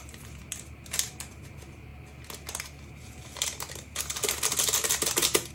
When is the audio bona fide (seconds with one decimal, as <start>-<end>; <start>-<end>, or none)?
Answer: 0.0-5.5